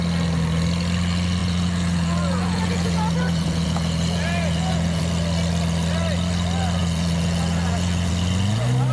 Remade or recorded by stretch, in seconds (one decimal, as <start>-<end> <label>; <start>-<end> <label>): 0.0-1.4 recorded; 1.4-5.0 remade; 5.0-6.8 recorded; 6.8-8.1 remade; 8.1-8.9 recorded